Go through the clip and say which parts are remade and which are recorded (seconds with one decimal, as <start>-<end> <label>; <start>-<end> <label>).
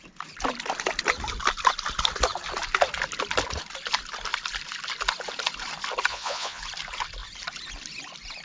0.0-6.1 recorded; 6.1-6.6 remade; 6.6-8.4 recorded